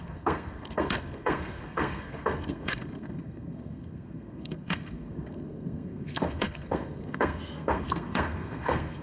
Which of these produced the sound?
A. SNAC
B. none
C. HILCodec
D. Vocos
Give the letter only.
A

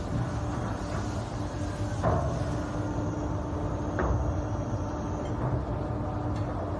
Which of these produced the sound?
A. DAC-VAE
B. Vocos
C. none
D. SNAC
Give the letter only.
C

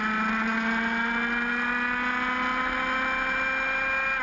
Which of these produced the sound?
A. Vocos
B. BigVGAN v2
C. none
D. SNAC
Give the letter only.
C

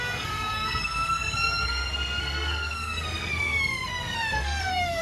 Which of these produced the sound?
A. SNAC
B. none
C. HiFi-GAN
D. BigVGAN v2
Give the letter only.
A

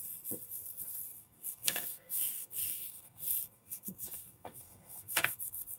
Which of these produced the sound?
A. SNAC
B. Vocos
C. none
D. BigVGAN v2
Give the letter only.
A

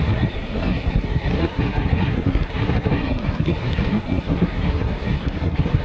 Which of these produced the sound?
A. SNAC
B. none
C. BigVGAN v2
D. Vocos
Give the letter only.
A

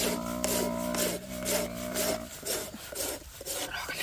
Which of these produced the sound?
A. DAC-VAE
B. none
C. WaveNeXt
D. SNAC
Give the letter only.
B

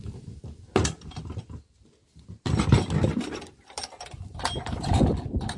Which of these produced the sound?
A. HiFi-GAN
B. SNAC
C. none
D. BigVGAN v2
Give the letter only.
C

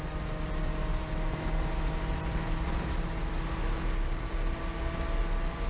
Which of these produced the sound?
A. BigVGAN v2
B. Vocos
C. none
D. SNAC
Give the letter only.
C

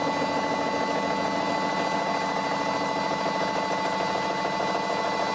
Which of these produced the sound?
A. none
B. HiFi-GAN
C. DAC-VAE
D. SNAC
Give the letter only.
A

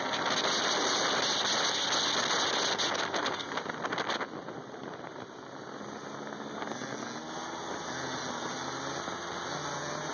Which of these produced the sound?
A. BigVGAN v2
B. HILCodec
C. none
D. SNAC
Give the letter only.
C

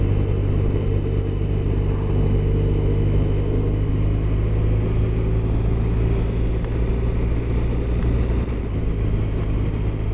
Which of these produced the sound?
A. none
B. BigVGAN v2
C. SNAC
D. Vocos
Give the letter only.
A